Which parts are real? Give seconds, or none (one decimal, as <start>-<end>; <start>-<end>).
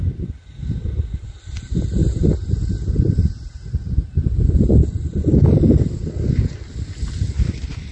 0.0-7.9